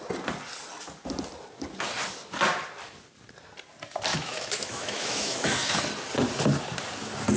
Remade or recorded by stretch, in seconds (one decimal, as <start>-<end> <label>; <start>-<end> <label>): 0.0-4.1 recorded; 4.1-5.8 remade; 5.8-7.4 recorded